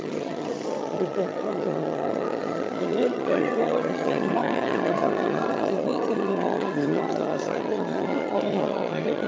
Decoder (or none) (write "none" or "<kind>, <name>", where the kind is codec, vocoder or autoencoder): vocoder, HiFi-GAN